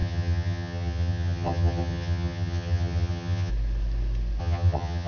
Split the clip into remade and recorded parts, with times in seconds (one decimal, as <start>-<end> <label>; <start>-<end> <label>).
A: 0.0-3.5 remade; 3.5-4.4 recorded; 4.4-5.1 remade